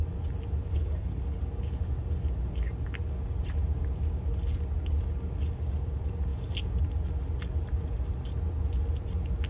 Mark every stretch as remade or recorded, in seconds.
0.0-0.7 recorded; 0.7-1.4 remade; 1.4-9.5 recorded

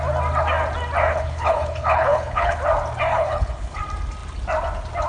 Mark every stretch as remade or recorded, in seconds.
0.0-1.1 recorded; 1.1-2.6 remade; 2.6-3.1 recorded; 3.1-3.8 remade; 3.8-5.1 recorded

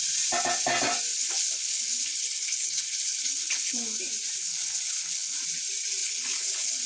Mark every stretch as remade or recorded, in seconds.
0.0-1.1 recorded; 1.1-4.0 remade; 4.0-4.4 recorded; 4.4-5.4 remade; 5.4-6.0 recorded; 6.0-6.9 remade

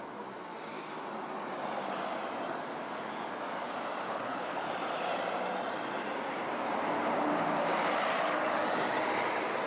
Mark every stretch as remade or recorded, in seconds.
0.0-4.1 recorded; 4.1-4.7 remade; 4.7-9.7 recorded

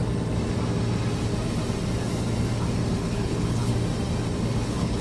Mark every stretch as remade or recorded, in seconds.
0.0-3.0 recorded; 3.0-3.7 remade; 3.7-4.5 recorded; 4.5-5.0 remade